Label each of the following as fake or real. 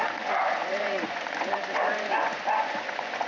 fake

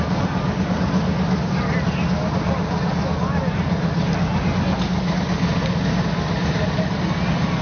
real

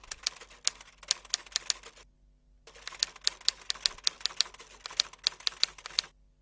real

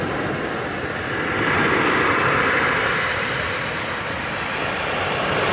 real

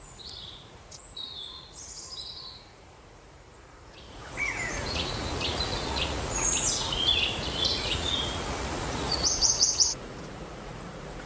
fake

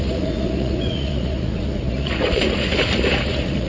fake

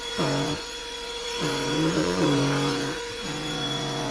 fake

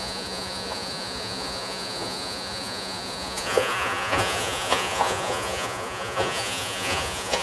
fake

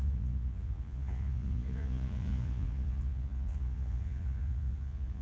fake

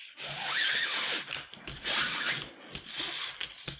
real